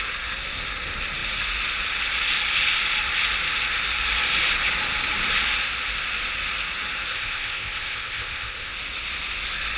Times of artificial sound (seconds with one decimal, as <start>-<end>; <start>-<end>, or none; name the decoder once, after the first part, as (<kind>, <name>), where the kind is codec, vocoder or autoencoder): 7.1-8.7 (codec, ZipCodec)